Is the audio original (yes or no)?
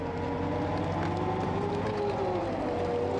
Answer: yes